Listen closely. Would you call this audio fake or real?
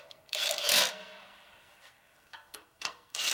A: fake